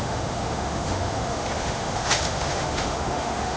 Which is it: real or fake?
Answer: fake